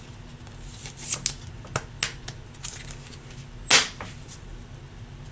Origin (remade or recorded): recorded